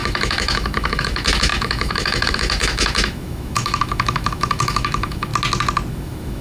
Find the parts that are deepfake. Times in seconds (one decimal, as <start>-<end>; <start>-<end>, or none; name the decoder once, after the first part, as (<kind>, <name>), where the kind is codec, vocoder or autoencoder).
0.0-5.3 (autoencoder, DAC-VAE); 5.9-6.4